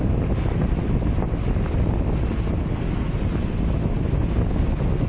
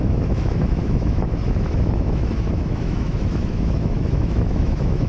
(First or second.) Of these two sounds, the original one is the first